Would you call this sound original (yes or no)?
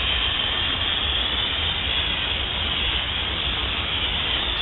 yes